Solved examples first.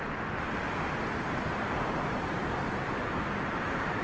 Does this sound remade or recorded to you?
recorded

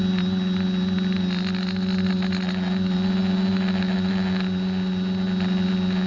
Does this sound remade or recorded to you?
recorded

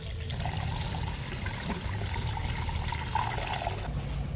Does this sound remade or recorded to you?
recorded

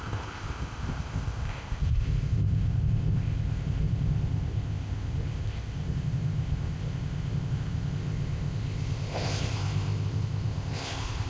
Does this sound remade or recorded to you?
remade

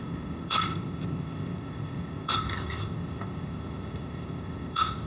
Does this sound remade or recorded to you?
remade